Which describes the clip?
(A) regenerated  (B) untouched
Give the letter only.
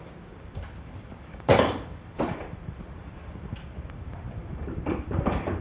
A